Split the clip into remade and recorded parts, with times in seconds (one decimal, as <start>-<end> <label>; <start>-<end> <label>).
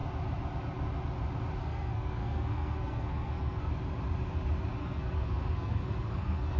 0.0-1.6 recorded; 1.6-3.7 remade; 3.7-4.8 recorded; 4.8-6.6 remade